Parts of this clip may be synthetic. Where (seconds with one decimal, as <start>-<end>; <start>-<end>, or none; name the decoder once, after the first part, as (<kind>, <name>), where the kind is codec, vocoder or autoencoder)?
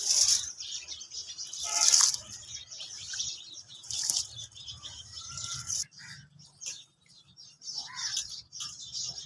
0.0-1.2 (vocoder, BigVGAN v2); 2.0-9.3